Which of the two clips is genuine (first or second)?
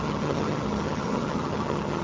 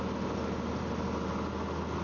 second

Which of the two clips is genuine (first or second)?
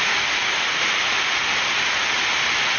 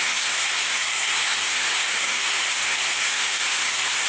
first